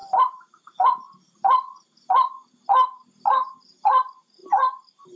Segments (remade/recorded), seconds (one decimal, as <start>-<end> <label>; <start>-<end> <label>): 0.0-5.2 recorded